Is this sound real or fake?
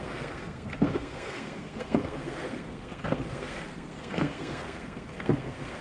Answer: fake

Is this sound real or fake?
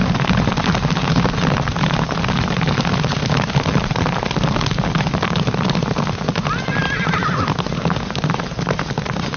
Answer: real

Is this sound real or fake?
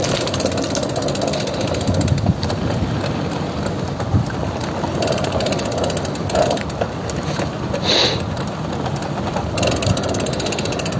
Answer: real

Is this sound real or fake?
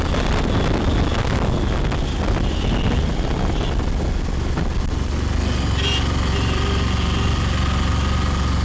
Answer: real